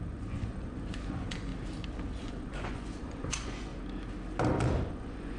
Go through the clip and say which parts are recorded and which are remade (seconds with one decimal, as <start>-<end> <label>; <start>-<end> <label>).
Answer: 0.0-1.5 remade; 1.5-2.2 recorded; 2.2-3.7 remade; 3.7-4.9 recorded; 4.9-5.4 remade